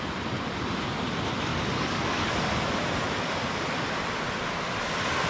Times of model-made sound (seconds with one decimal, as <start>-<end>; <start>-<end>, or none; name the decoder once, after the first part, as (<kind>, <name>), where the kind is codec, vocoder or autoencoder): 1.5-2.3 (codec, DAC)